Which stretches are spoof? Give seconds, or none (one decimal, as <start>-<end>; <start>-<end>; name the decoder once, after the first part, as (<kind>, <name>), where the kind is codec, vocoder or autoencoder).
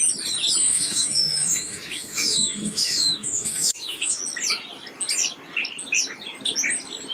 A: 0.6-4.2 (autoencoder, DAC-VAE)